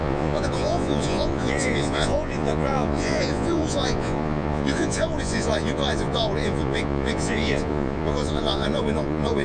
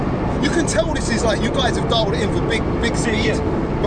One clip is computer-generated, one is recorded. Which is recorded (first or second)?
second